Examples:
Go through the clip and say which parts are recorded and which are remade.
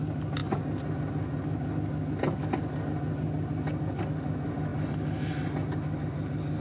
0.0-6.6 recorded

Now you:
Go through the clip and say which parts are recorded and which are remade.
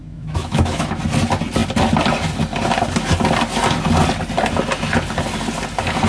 0.0-1.0 remade; 1.0-6.1 recorded